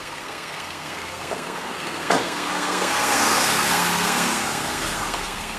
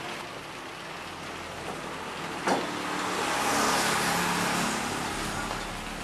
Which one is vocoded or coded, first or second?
first